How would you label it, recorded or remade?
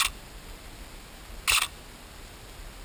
recorded